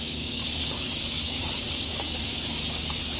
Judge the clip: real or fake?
fake